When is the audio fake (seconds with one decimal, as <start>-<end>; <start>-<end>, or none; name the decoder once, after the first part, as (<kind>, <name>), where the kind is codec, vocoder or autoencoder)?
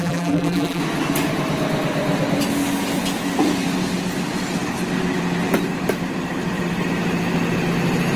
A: 0.0-0.8 (vocoder, BigVGAN v2)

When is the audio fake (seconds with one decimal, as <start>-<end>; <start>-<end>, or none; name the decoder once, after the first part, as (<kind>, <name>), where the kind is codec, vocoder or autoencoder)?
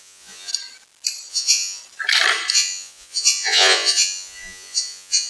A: 0.0-0.5 (vocoder, Vocos); 1.3-1.8; 2.5-5.3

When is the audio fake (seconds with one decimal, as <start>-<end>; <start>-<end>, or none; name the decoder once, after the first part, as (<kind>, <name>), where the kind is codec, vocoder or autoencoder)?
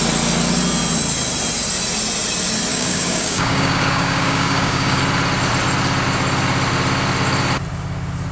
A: 2.7-5.0 (codec, DAC)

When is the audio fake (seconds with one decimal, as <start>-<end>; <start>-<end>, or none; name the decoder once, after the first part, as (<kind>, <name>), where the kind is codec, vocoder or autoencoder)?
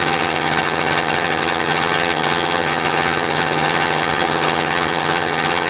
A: 0.0-5.7 (vocoder, HiFi-GAN)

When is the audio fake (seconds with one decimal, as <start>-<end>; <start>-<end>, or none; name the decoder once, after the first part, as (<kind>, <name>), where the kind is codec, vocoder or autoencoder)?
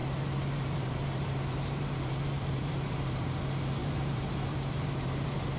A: 0.0-3.4 (vocoder, BigVGAN v2); 3.8-5.6